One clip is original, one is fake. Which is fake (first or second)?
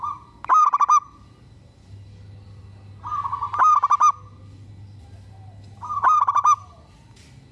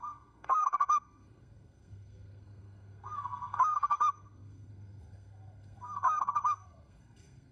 second